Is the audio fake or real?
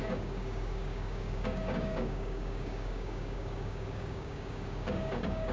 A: fake